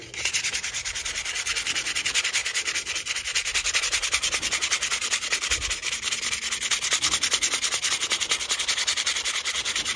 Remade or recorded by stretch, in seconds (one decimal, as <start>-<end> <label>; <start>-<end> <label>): 0.0-10.0 recorded